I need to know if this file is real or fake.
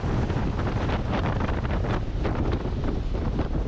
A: fake